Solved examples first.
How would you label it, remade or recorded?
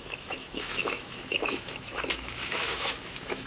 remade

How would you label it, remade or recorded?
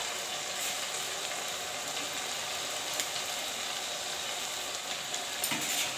recorded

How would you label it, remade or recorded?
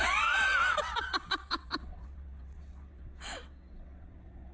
remade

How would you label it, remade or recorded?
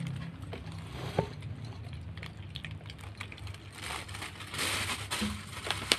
recorded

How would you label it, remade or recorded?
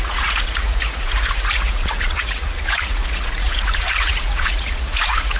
remade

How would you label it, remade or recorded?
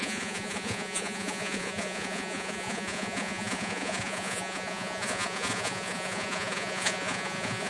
remade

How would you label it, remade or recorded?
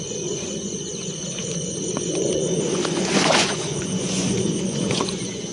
remade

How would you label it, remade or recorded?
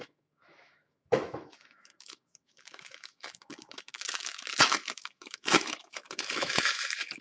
remade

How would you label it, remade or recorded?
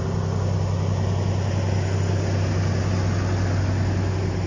recorded